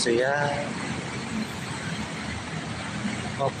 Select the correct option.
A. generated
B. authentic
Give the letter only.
B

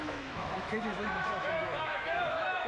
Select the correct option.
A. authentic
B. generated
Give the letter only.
B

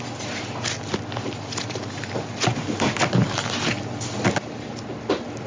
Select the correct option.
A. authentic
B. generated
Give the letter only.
A